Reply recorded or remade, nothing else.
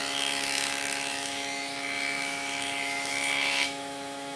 remade